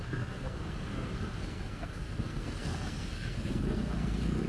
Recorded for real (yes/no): no